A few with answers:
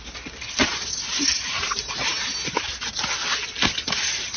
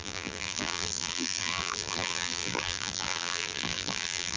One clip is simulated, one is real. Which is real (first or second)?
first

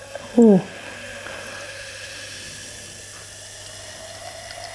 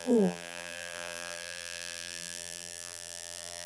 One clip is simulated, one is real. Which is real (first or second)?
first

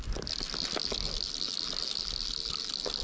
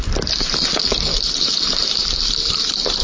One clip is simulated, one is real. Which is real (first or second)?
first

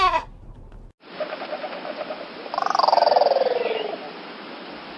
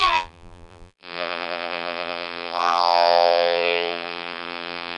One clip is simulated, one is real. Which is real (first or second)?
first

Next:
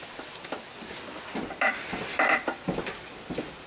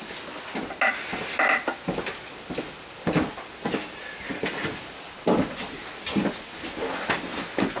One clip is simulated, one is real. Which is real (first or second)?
second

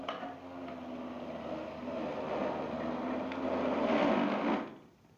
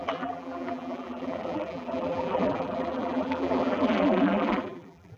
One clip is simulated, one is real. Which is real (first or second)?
first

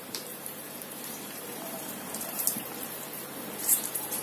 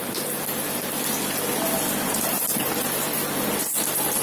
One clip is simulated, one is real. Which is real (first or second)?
second